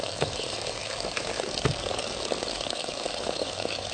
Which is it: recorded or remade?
remade